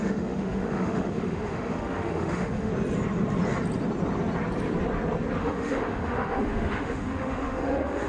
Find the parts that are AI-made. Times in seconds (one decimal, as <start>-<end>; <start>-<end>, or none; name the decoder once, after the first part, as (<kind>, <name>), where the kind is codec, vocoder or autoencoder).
0.0-2.7 (autoencoder, DAC-VAE); 5.4-8.1